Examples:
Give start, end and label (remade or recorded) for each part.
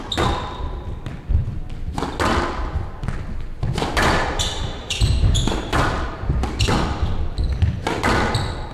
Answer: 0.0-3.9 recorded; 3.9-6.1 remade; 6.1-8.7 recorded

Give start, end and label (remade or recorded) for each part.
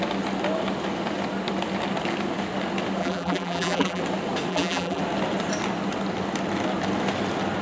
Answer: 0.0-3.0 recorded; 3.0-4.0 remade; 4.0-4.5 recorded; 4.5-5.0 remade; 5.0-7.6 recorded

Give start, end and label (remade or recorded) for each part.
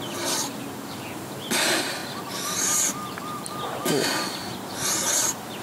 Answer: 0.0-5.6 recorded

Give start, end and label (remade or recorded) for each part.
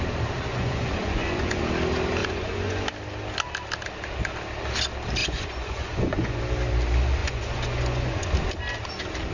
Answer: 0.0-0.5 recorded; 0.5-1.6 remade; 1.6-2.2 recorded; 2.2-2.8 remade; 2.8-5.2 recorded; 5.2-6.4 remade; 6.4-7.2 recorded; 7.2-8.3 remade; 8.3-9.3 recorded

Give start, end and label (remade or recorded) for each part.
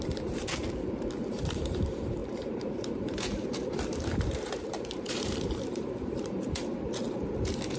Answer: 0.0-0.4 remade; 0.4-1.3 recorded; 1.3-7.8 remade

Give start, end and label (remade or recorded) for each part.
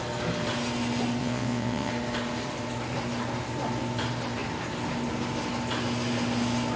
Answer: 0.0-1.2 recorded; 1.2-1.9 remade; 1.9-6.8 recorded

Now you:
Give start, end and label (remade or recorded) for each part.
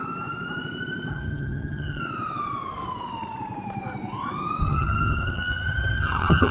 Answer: 0.0-1.1 recorded; 1.1-2.0 remade; 2.0-4.6 recorded; 4.6-6.5 remade